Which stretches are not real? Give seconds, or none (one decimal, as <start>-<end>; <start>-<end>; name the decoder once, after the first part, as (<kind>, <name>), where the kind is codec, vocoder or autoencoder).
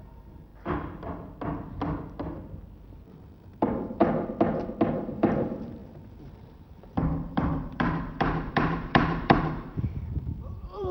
0.0-0.5 (vocoder, BigVGAN v2); 3.1-4.0; 4.9-10.9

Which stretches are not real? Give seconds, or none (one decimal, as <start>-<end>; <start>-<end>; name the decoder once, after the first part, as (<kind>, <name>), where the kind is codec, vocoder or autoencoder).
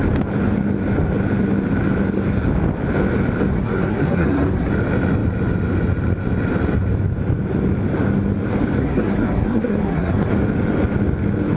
3.5-4.7 (codec, SNAC); 8.8-10.3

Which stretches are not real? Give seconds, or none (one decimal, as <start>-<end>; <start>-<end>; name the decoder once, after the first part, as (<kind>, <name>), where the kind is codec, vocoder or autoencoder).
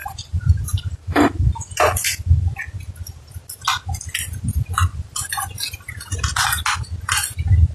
0.0-2.3 (vocoder, BigVGAN v2); 4.9-5.4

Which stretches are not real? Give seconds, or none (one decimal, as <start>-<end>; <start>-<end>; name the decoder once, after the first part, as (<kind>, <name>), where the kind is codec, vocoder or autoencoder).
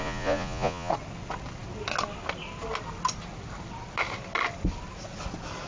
0.0-0.9 (vocoder, Vocos)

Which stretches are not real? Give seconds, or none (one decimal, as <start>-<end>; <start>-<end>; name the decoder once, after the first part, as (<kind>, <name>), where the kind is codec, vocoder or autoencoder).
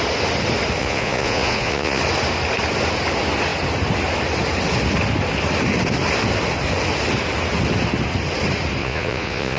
0.8-2.0 (vocoder, Vocos); 8.8-9.6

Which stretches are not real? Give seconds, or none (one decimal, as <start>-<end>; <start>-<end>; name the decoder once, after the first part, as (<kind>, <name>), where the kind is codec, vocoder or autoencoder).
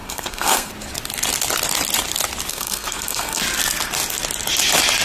0.0-0.7 (codec, SNAC); 2.5-3.4